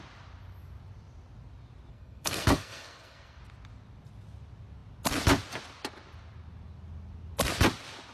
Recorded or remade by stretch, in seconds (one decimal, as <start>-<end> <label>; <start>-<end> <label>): 0.0-1.9 recorded; 1.9-3.4 remade; 3.4-8.1 recorded

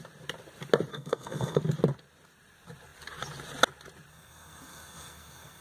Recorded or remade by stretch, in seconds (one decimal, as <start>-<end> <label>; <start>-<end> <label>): 0.0-0.9 recorded; 0.9-1.6 remade; 1.6-4.1 recorded; 4.1-5.6 remade

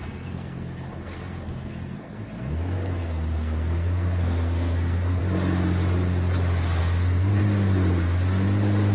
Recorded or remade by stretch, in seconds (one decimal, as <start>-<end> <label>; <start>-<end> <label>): 0.0-5.2 remade; 5.2-6.8 recorded; 6.8-7.4 remade; 7.4-8.9 recorded

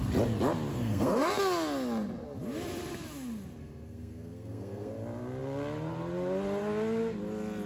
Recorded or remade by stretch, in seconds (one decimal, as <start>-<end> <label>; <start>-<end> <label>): 0.0-0.7 recorded; 0.7-1.3 remade; 1.3-3.6 recorded; 3.6-4.9 remade; 4.9-7.7 recorded

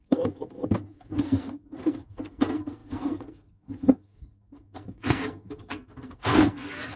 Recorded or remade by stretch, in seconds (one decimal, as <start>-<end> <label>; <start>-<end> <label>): 0.0-7.0 remade